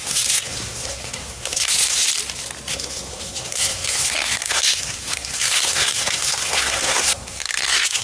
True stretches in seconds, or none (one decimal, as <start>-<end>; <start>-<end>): 2.1-2.7